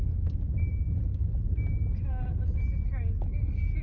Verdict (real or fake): fake